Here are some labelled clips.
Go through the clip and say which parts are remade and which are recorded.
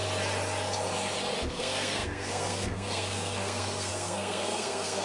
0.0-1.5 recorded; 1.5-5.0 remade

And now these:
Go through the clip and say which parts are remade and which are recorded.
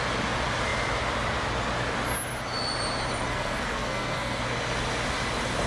0.0-3.3 recorded; 3.3-4.4 remade; 4.4-5.7 recorded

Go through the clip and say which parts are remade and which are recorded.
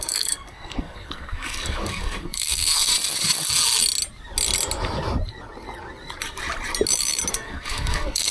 0.0-2.9 remade; 2.9-7.3 recorded; 7.3-8.3 remade